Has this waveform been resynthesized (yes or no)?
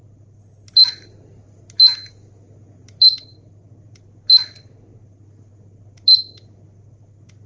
no